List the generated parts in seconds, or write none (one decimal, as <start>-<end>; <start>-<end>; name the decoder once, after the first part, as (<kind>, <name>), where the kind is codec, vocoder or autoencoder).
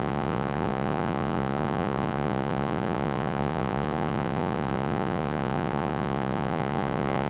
0.0-7.3 (vocoder, Vocos)